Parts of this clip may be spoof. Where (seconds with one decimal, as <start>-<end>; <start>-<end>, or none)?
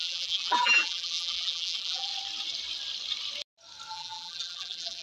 0.0-2.1; 3.9-5.0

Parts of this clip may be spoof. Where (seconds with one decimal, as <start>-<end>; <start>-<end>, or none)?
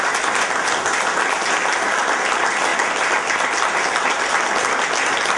none